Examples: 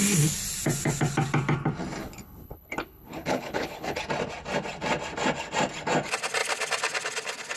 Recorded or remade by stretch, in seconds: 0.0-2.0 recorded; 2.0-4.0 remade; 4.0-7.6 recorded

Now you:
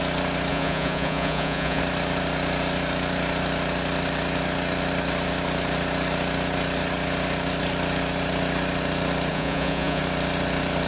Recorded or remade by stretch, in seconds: 0.0-0.5 recorded; 0.5-1.8 remade; 1.8-9.3 recorded; 9.3-10.0 remade; 10.0-10.9 recorded